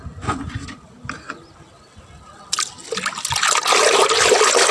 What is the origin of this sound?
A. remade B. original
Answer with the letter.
B